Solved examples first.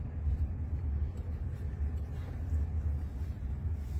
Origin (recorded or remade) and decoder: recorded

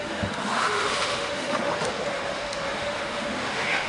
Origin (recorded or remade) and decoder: remade, autoencoder, DAC-VAE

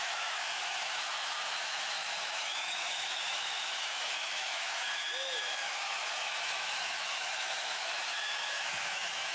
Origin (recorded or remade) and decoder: remade, autoencoder, DAC-VAE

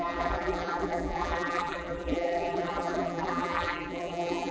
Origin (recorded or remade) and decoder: remade, vocoder, BigVGAN v2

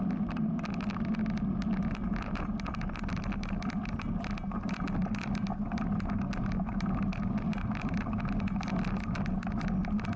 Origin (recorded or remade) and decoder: recorded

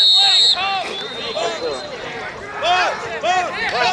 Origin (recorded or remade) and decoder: recorded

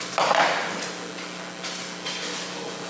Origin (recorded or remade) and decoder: recorded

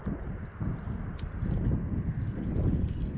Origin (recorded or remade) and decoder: recorded